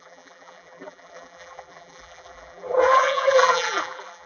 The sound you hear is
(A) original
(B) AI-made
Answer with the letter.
B